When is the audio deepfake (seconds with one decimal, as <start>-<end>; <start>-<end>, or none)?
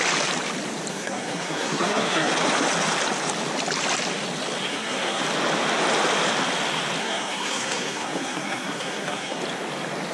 0.9-2.3; 4.7-5.2; 7.0-9.4